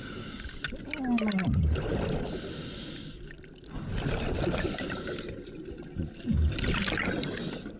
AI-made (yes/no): no